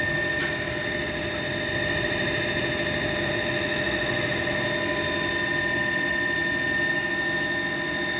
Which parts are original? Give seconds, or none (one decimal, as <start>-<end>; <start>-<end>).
0.0-8.2